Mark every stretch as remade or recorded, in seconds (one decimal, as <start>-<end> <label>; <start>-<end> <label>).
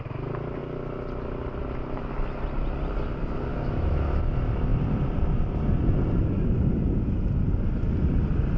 0.0-3.5 recorded; 3.5-4.2 remade; 4.2-8.6 recorded